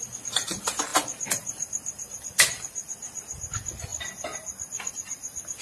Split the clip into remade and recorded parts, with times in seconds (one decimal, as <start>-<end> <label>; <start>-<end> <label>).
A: 0.0-5.6 recorded

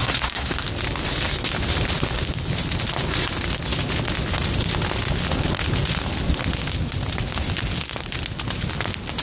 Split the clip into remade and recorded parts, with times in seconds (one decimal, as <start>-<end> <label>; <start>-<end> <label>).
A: 0.0-0.5 remade; 0.5-9.2 recorded

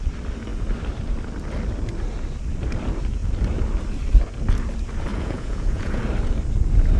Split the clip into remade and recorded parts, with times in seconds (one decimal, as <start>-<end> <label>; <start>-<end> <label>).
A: 0.0-5.1 recorded; 5.1-6.0 remade; 6.0-7.0 recorded

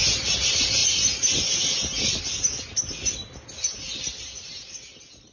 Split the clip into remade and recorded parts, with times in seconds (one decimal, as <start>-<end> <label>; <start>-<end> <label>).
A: 0.0-0.8 recorded; 0.8-2.2 remade; 2.2-5.3 recorded

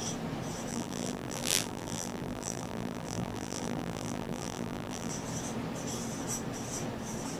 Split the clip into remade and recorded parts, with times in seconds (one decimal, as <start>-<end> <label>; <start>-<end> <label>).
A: 0.0-0.7 recorded; 0.7-5.1 remade; 5.1-7.4 recorded

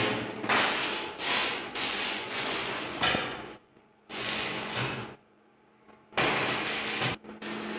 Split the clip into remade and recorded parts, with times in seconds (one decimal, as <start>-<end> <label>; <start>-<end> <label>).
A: 0.0-1.4 recorded; 1.4-5.4 remade; 5.4-7.8 recorded

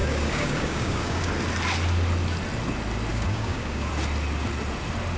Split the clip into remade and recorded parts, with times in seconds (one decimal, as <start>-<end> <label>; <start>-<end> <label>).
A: 0.0-1.3 remade; 1.3-3.1 recorded; 3.1-3.9 remade; 3.9-5.2 recorded

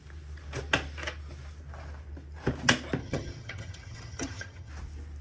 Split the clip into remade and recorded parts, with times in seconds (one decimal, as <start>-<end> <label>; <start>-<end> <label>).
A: 0.0-3.0 recorded; 3.0-4.7 remade; 4.7-5.2 recorded